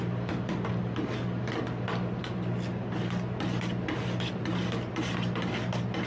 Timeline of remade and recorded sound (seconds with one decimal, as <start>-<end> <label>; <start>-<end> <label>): 0.0-6.1 recorded

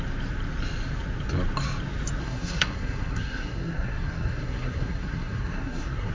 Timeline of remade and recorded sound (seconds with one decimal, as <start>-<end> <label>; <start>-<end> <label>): 0.0-2.2 recorded; 2.2-6.1 remade

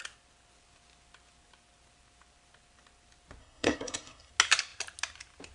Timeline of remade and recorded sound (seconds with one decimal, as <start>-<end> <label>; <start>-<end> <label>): 0.0-3.4 recorded; 3.4-4.3 remade; 4.3-5.5 recorded

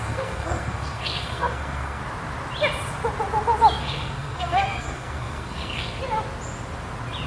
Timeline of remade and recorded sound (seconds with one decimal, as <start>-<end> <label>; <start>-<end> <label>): 0.0-2.0 remade; 2.0-3.8 recorded; 3.8-6.0 remade; 6.0-7.3 recorded

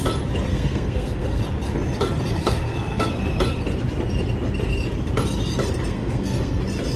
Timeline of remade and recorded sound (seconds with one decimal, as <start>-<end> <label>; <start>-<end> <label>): 0.0-0.5 recorded; 0.5-1.4 remade; 1.4-2.4 recorded; 2.4-3.1 remade; 3.1-5.9 recorded; 5.9-6.6 remade; 6.6-7.0 recorded

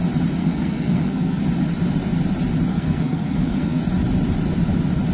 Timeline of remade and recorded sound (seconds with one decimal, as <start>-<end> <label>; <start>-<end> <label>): 0.0-0.4 recorded; 0.4-1.4 remade; 1.4-2.7 recorded; 2.7-3.8 remade; 3.8-5.1 recorded

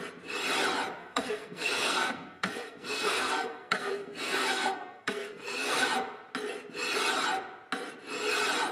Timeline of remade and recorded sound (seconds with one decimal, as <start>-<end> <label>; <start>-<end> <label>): 0.0-1.0 recorded; 1.0-5.9 remade; 5.9-8.7 recorded

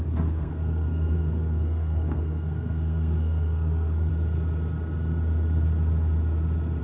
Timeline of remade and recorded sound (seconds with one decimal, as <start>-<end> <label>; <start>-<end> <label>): 0.0-4.1 remade; 4.1-6.8 recorded